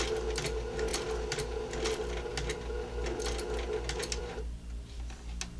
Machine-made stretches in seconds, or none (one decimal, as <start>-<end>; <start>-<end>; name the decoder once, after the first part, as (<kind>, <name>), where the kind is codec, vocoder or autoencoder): none